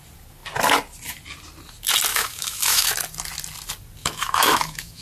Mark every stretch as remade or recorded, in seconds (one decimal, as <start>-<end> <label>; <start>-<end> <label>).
0.0-2.1 recorded; 2.1-2.9 remade; 2.9-4.0 recorded; 4.0-5.0 remade